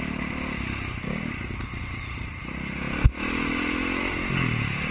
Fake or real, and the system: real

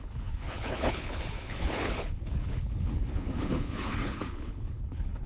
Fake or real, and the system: fake, codec, HILCodec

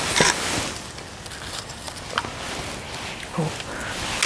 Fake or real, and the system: real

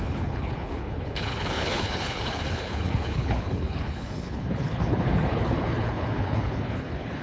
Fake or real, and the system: fake, codec, HILCodec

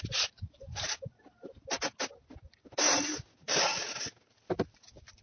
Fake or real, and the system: real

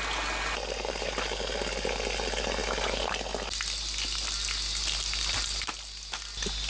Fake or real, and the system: real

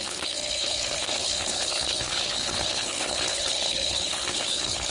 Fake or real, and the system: fake, codec, HILCodec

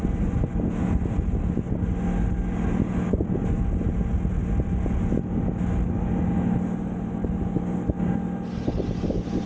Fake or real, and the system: real